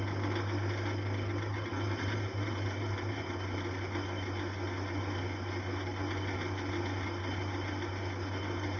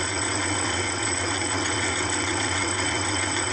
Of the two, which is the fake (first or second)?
second